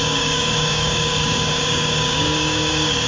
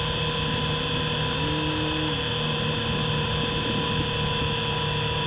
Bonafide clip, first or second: second